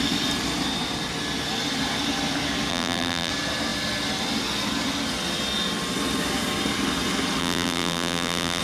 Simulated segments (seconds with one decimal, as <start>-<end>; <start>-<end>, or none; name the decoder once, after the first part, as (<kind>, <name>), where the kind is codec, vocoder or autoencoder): 2.7-3.3 (vocoder, BigVGAN v2); 7.4-8.6